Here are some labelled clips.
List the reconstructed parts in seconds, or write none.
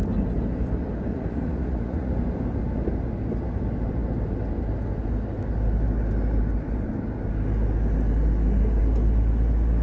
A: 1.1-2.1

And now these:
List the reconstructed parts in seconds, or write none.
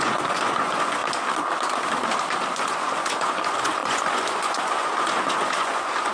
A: 0.0-1.0; 2.5-6.1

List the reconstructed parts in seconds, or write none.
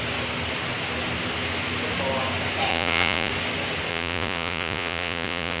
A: 2.7-3.3; 3.9-5.6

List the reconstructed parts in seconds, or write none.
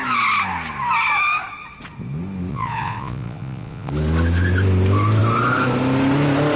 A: 2.5-3.9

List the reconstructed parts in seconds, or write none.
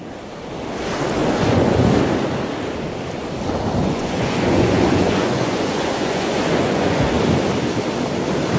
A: 1.2-1.9; 3.8-7.1